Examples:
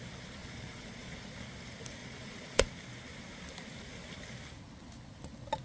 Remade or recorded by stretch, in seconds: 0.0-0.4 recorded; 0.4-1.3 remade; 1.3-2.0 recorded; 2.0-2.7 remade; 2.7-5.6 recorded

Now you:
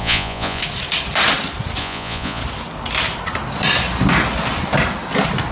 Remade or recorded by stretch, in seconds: 0.0-0.6 remade; 0.6-1.8 recorded; 1.8-2.4 remade; 2.4-5.5 recorded

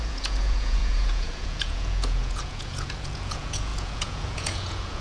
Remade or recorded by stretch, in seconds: 0.0-5.0 remade